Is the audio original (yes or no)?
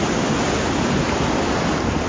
yes